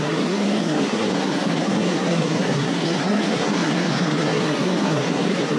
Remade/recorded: remade